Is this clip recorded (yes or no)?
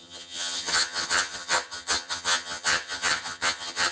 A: no